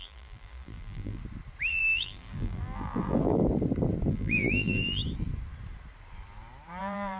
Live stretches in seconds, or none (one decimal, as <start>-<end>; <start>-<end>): 1.2-1.7; 3.4-4.1; 5.0-6.8